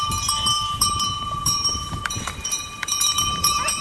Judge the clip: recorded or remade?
remade